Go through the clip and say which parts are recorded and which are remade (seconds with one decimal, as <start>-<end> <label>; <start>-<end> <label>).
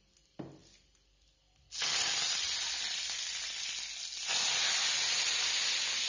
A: 0.0-6.1 recorded